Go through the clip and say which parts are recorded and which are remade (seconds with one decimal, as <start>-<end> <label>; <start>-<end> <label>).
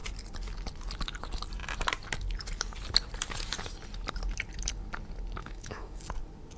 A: 0.0-5.4 recorded; 5.4-6.0 remade; 6.0-6.6 recorded